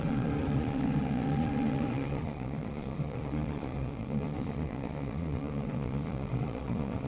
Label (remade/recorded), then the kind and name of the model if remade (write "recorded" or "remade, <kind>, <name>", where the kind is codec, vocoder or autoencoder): remade, vocoder, Vocos